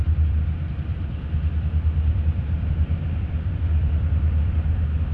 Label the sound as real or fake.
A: fake